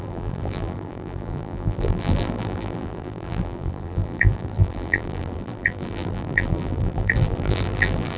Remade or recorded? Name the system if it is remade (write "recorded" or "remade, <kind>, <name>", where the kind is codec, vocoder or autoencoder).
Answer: remade, vocoder, BigVGAN v2